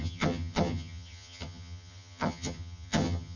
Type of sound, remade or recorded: remade